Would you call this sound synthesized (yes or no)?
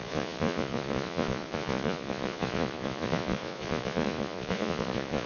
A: yes